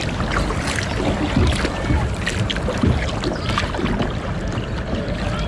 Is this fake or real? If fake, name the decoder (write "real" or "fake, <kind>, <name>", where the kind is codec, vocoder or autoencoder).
real